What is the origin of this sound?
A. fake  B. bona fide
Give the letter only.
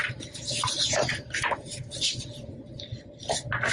B